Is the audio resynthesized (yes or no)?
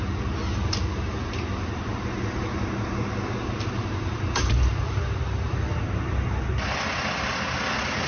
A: no